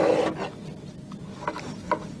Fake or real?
real